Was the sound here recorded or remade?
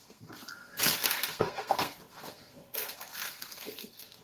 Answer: remade